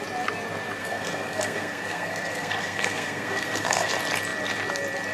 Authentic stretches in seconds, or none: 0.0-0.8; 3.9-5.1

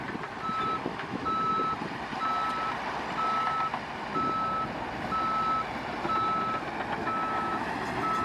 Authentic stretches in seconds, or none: 0.0-0.9; 1.5-7.0; 7.7-8.2

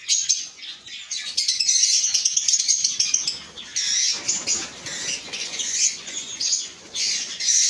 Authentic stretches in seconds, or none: 3.2-5.2

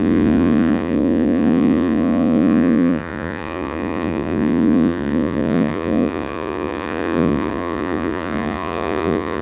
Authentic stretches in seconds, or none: none

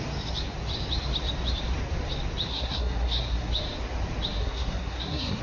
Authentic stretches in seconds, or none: 0.0-2.5; 3.5-4.4

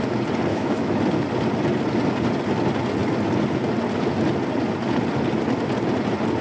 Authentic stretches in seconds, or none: 0.0-0.5; 1.0-6.4

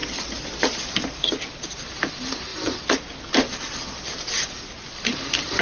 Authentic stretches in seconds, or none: 0.0-5.6